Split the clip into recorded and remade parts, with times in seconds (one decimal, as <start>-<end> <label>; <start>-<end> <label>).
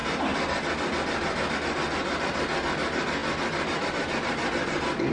0.0-3.2 recorded; 3.2-3.9 remade; 3.9-5.1 recorded